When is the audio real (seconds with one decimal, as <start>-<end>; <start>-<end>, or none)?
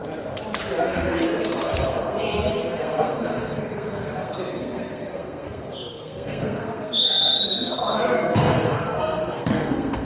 0.0-0.8